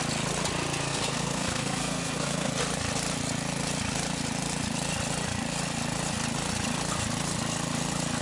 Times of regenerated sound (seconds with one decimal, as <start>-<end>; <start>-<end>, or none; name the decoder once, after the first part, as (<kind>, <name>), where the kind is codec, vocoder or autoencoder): 0.8-2.5 (codec, SNAC)